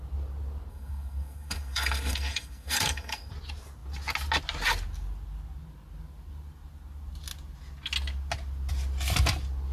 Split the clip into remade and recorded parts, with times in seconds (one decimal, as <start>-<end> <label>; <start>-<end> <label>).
0.0-0.7 recorded; 0.7-3.3 remade; 3.3-9.7 recorded